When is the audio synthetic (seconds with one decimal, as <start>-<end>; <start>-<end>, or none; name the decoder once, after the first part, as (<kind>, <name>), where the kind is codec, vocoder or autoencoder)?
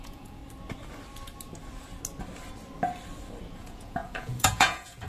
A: 0.0-0.4 (vocoder, Vocos); 3.5-5.1